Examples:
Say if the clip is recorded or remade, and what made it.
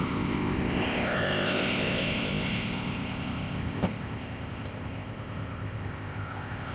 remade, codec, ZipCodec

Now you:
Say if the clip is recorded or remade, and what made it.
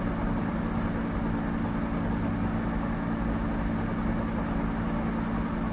recorded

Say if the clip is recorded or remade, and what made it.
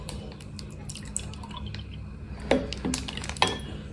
recorded